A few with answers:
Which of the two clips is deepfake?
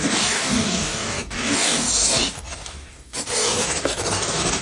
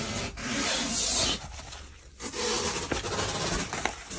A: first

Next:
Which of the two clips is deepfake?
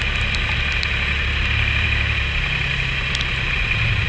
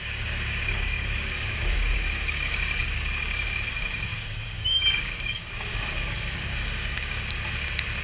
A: second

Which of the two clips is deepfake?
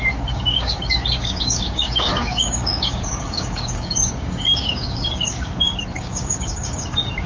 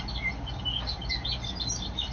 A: first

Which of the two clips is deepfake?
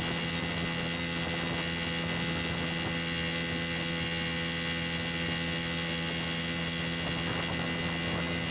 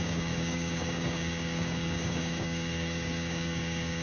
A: second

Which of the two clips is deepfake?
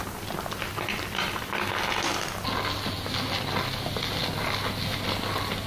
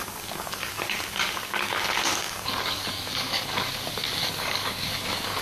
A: second